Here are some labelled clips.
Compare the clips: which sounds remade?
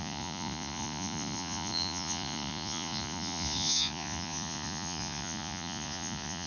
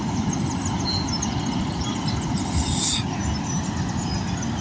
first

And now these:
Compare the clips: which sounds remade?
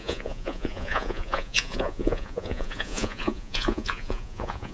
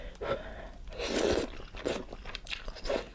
first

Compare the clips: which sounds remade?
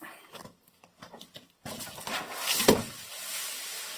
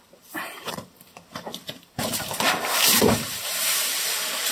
second